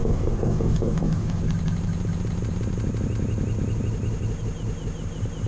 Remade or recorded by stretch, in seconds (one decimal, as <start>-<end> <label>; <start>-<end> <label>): 0.0-1.4 remade; 1.4-5.5 recorded